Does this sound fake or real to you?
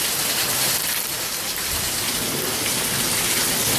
real